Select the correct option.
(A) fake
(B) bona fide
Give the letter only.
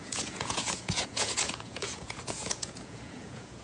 A